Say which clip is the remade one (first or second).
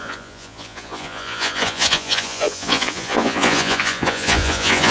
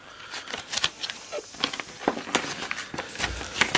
first